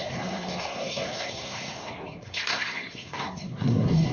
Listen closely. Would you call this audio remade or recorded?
remade